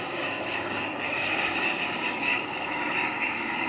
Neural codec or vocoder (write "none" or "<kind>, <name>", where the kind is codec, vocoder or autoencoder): codec, DAC